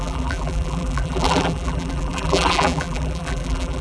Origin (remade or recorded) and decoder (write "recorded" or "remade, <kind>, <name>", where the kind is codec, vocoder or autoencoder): remade, vocoder, BigVGAN v2